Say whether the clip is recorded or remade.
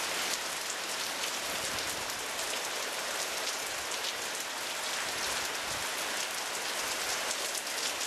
recorded